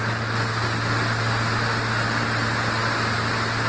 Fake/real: real